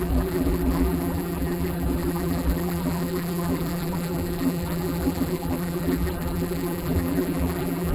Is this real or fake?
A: fake